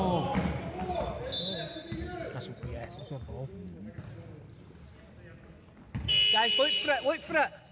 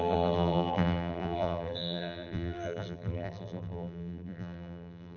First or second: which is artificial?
second